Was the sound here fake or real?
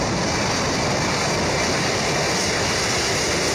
real